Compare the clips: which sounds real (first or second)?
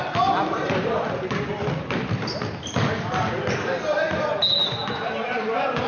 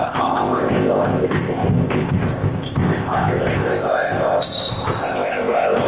first